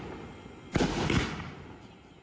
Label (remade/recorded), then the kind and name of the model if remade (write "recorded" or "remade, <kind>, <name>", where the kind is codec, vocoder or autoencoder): recorded